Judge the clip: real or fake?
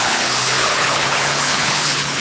fake